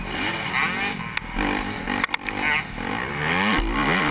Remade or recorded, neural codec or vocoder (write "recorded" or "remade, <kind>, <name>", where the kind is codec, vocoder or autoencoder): recorded